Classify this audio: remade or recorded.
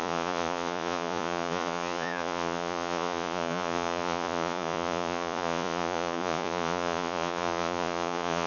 remade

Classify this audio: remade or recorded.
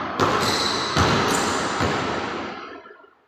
recorded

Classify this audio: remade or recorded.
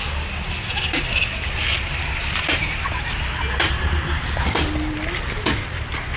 recorded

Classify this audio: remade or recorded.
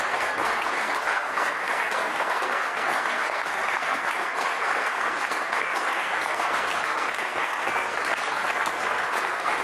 remade